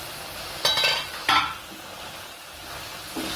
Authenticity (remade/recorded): recorded